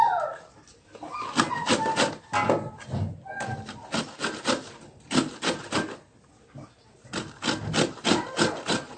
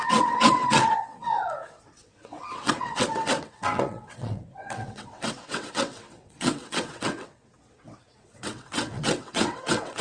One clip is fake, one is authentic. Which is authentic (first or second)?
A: first